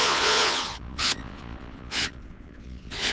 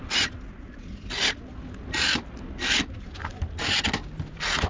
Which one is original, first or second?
second